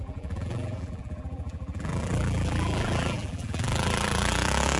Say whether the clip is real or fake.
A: fake